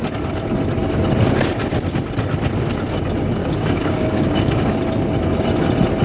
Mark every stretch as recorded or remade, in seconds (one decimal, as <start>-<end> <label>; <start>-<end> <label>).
0.0-3.4 recorded; 3.4-4.7 remade; 4.7-6.0 recorded

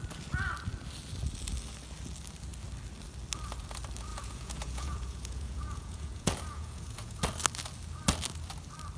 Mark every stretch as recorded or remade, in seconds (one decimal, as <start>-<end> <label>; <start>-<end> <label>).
0.0-4.1 recorded; 4.1-7.2 remade; 7.2-9.0 recorded